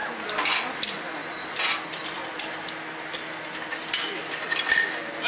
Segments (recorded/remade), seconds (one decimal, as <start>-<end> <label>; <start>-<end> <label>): 0.0-5.3 recorded